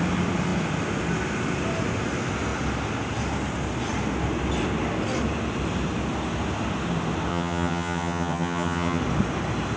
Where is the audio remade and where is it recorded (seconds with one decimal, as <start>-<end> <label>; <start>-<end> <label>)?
0.0-7.3 recorded; 7.3-9.0 remade; 9.0-9.8 recorded